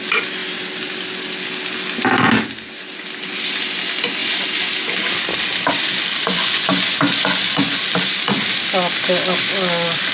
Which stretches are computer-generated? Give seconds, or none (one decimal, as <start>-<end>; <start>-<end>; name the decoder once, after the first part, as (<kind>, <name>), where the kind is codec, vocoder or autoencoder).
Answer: 6.2-7.8 (vocoder, Vocos)